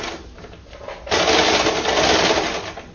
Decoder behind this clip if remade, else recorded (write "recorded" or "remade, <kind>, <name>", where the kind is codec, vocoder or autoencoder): recorded